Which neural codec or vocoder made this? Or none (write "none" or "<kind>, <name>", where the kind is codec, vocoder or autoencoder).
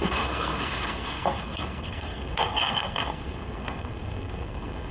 codec, SNAC